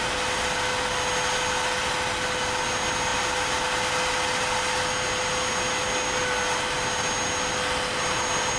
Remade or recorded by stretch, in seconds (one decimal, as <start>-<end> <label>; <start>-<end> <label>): 0.0-8.6 recorded